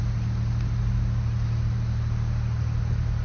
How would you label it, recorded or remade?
recorded